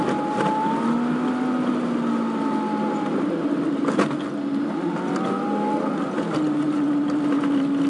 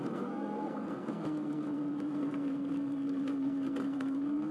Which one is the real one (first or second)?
first